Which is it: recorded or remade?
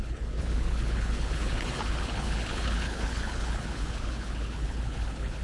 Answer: remade